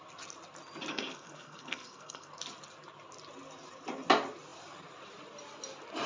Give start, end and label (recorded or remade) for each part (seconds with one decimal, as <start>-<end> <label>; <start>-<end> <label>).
0.0-0.9 recorded; 0.9-2.3 remade; 2.3-6.1 recorded